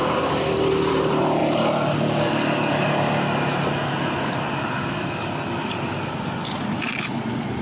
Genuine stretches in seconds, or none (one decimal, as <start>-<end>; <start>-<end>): 1.4-4.8